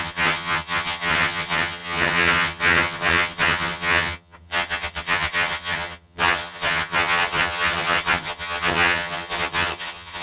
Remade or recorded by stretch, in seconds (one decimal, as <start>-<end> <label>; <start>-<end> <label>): 0.0-10.2 remade